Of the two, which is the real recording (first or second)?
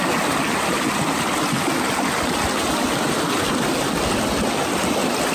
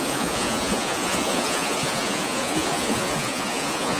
first